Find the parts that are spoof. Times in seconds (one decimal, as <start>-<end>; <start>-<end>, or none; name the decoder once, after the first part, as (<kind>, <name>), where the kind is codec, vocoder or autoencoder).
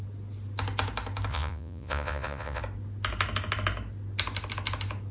1.3-2.6 (vocoder, Vocos)